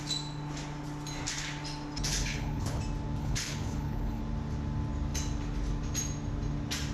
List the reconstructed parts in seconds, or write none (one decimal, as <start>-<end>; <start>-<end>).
2.1-2.8; 3.2-4.2